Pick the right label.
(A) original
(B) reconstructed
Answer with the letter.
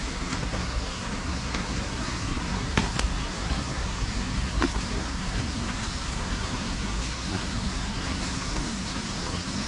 B